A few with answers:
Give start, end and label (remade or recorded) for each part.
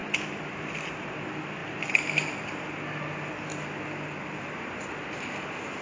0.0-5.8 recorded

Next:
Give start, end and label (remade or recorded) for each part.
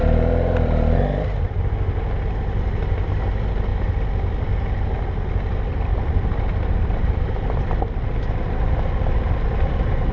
0.0-1.7 remade; 1.7-10.1 recorded